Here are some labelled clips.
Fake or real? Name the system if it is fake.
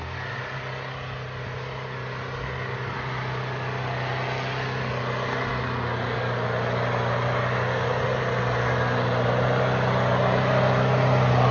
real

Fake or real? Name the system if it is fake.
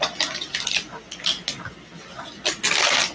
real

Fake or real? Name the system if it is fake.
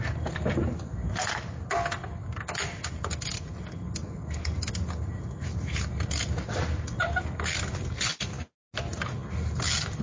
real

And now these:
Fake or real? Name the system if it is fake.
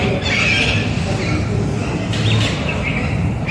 real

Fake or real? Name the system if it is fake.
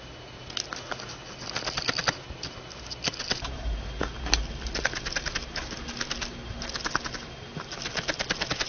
real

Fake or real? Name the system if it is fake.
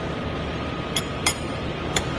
fake, vocoder, BigVGAN v2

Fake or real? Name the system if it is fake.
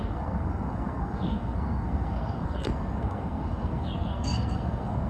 fake, codec, SNAC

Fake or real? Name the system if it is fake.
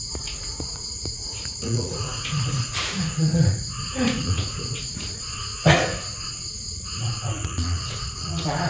fake, vocoder, Vocos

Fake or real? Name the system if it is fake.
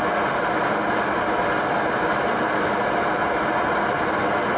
real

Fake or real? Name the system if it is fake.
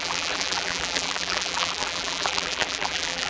fake, vocoder, BigVGAN v2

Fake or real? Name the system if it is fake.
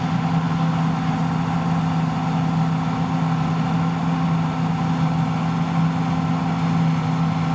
real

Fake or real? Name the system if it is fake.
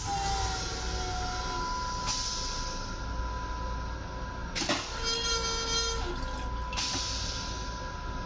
real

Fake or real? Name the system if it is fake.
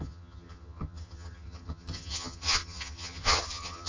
fake, vocoder, HiFi-GAN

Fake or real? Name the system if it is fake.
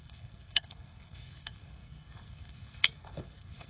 fake, codec, SNAC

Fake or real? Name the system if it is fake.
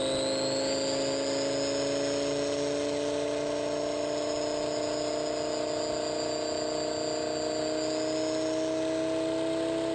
real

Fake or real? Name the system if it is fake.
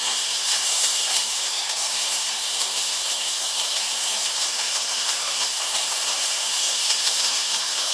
fake, codec, SNAC